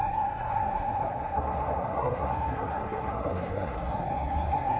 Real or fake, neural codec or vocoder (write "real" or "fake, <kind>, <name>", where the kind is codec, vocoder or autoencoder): fake, codec, SNAC